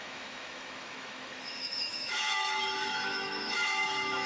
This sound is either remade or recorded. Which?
remade